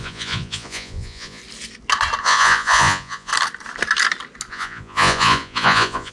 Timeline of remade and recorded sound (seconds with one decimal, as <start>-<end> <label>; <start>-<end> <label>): 0.0-1.4 remade; 1.4-2.2 recorded; 2.2-3.3 remade; 3.3-4.5 recorded; 4.5-6.1 remade

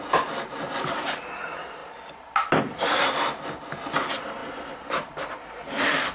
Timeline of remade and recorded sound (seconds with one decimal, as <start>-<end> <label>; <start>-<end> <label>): 0.0-6.1 recorded